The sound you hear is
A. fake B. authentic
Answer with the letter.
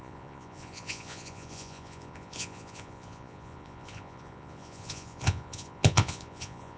A